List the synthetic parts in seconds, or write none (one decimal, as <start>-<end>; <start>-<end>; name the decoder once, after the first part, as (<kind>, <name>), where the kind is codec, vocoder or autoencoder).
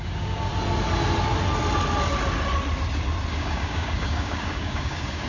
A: 0.0-0.5 (codec, DAC); 3.3-5.3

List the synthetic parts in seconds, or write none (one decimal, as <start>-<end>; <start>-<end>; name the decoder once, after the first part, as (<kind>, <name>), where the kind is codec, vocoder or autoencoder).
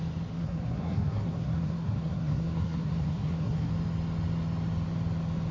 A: 0.4-3.7 (codec, SNAC)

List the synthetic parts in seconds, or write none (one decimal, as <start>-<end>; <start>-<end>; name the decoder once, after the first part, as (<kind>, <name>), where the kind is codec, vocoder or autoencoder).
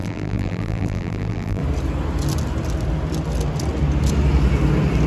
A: 0.0-1.6 (vocoder, BigVGAN v2)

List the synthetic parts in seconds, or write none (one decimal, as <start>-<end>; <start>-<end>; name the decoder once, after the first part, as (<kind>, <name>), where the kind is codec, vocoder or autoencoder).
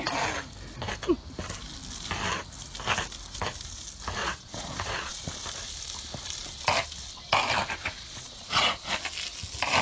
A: 4.2-5.3 (vocoder, Vocos); 7.8-8.9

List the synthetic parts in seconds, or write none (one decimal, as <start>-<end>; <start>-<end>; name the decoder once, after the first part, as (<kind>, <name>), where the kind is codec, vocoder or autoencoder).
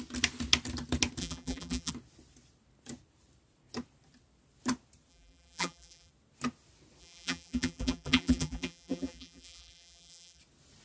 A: 1.2-1.9 (vocoder, BigVGAN v2); 5.1-6.1; 7.0-10.4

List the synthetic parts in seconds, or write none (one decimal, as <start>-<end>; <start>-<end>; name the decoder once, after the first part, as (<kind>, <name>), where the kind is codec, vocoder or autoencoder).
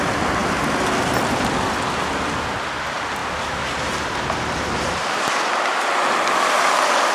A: 3.2-5.2 (vocoder, BigVGAN v2)